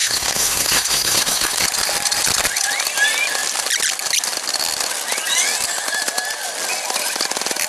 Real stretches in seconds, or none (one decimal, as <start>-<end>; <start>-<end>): 1.6-7.7